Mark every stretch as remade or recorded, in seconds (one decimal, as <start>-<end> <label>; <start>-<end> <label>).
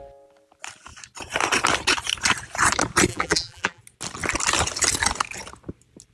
0.0-3.1 recorded; 3.1-3.8 remade; 3.8-6.1 recorded